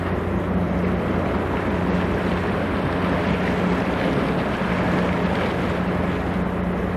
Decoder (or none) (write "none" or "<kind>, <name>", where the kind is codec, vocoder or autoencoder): none